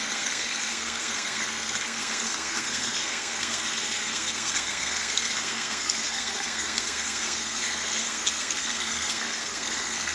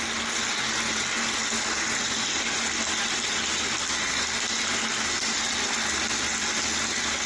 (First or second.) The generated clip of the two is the first